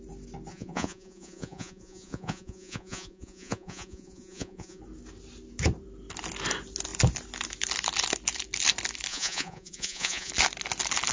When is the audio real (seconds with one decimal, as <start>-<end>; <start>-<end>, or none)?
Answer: 0.0-0.5; 4.8-9.1; 10.3-11.1